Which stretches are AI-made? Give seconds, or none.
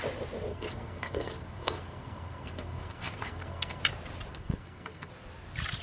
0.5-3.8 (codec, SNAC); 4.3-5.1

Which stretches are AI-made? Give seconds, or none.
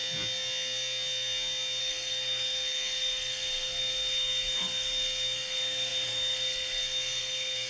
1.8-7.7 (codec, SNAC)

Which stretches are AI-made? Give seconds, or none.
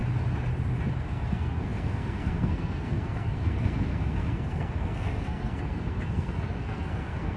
1.0-7.4 (codec, SNAC)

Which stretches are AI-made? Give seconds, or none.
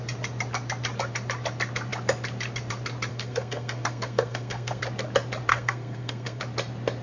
3.1-4.8 (codec, SNAC); 5.5-6.4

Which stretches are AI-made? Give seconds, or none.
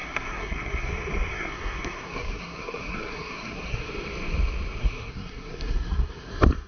0.0-0.9 (codec, SNAC); 1.3-3.9; 4.8-6.3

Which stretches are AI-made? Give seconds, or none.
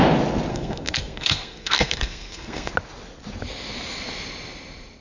0.5-2.7 (codec, SNAC)